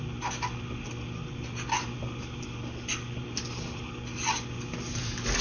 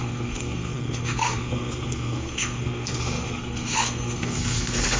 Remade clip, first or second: second